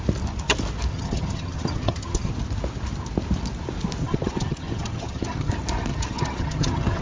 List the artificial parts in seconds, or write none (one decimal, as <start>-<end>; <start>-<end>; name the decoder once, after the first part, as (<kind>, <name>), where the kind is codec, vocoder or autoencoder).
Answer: 0.9-2.3 (vocoder, HiFi-GAN); 4.0-5.5; 5.9-7.0